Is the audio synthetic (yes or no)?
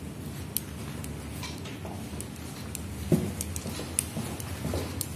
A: no